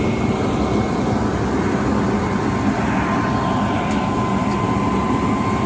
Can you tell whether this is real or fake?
real